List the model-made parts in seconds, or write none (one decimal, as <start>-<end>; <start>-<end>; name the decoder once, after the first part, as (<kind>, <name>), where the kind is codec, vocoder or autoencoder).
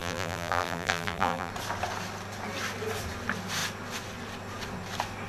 0.0-1.5 (vocoder, BigVGAN v2)